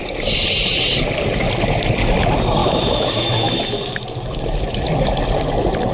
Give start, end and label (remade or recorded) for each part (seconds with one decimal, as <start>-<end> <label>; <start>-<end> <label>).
0.0-2.6 recorded; 2.6-3.9 remade; 3.9-5.9 recorded